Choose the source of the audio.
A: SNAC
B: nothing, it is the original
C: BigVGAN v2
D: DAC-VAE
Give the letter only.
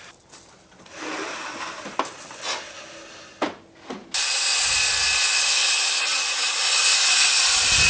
B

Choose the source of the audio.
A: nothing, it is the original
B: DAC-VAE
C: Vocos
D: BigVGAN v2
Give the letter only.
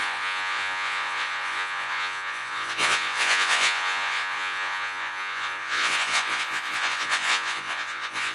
C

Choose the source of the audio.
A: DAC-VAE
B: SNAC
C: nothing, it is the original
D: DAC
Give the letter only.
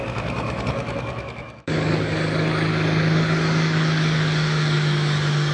D